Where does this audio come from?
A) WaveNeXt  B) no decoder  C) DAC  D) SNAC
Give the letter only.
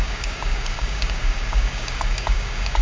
C